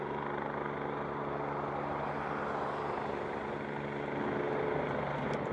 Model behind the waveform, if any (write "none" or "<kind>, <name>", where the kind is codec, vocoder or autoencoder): none